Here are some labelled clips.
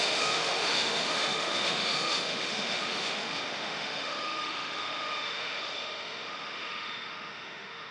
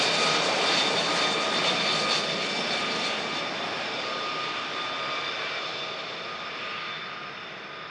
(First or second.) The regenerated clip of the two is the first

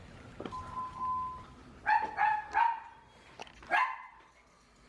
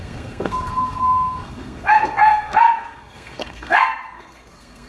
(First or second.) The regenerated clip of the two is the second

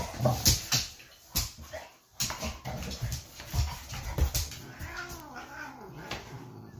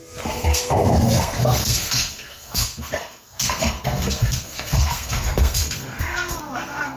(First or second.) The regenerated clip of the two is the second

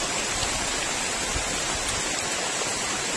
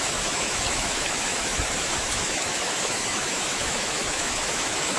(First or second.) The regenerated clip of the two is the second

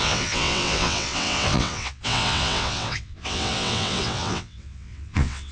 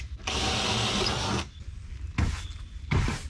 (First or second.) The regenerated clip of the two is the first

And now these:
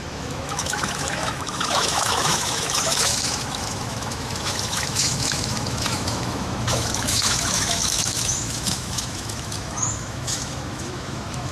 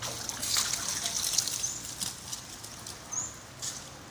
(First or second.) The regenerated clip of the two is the first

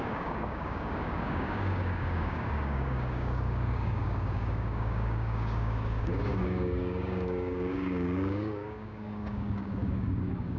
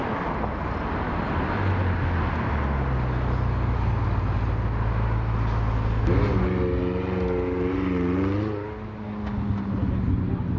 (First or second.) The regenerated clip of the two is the first